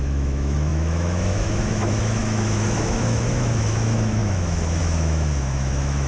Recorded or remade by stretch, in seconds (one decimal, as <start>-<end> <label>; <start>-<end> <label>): 0.0-6.1 remade